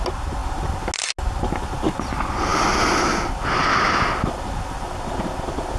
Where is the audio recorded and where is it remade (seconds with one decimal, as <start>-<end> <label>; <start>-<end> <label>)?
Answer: 0.0-5.8 recorded